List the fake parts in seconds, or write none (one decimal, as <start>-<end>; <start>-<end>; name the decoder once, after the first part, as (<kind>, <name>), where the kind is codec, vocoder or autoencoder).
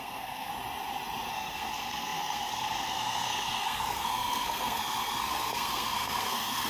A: 0.0-0.5 (codec, SNAC); 1.3-6.7